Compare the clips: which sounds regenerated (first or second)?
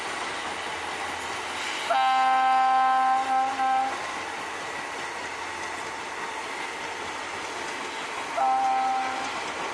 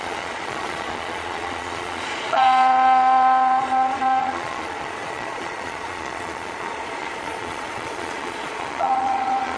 second